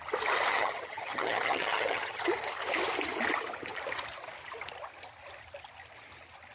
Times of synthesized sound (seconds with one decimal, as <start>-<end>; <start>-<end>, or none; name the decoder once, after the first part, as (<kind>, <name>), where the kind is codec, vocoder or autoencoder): 0.5-2.3 (vocoder, HiFi-GAN)